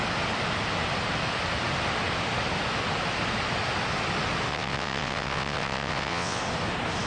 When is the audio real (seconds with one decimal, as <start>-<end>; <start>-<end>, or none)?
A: 0.0-4.5; 6.4-7.1